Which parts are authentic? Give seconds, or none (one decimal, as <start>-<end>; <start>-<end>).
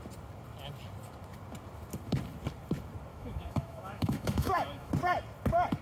0.0-3.1; 4.9-5.8